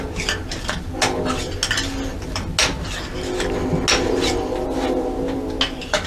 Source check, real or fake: real